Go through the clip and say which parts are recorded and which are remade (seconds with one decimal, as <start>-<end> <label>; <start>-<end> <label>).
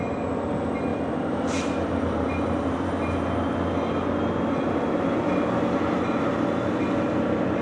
0.0-0.9 recorded; 0.9-3.0 remade; 3.0-7.6 recorded